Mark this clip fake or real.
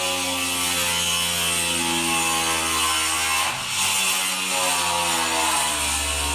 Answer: real